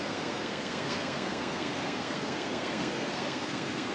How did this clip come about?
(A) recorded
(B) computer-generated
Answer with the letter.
B